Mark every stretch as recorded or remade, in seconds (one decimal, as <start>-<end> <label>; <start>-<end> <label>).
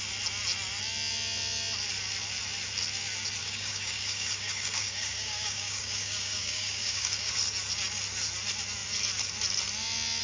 0.0-3.4 recorded; 3.4-7.3 remade; 7.3-10.2 recorded